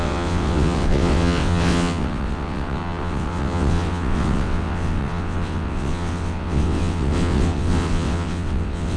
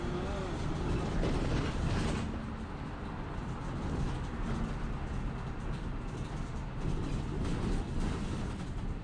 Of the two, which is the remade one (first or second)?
first